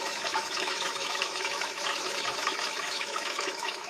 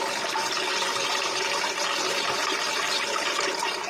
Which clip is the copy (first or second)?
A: first